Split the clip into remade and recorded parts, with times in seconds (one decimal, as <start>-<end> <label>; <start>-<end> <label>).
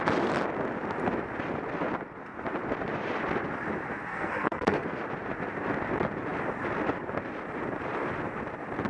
0.0-4.1 recorded; 4.1-5.0 remade; 5.0-8.9 recorded